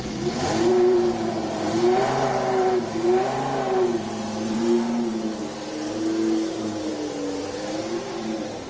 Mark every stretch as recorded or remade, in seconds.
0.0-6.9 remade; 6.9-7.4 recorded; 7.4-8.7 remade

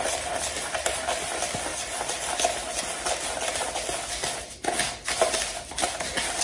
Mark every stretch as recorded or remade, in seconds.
0.0-6.4 recorded